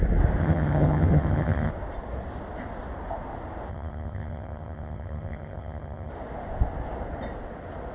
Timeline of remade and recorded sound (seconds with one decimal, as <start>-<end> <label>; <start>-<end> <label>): 0.0-0.4 recorded; 0.4-1.7 remade; 1.7-3.7 recorded; 3.7-6.1 remade; 6.1-7.9 recorded